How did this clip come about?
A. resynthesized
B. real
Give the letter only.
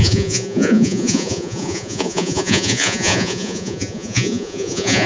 A